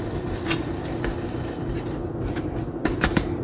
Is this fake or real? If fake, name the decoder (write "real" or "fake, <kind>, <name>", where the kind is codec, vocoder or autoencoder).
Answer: fake, vocoder, BigVGAN v2